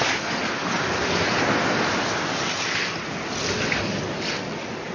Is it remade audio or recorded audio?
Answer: recorded